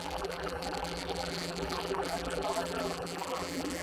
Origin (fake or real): fake